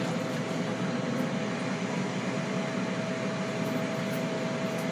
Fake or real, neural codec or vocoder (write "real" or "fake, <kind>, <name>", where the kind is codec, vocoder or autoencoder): real